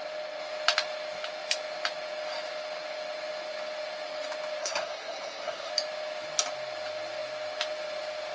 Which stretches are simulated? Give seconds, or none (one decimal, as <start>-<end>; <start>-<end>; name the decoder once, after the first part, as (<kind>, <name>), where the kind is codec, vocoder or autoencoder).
4.6-5.7 (codec, SNAC)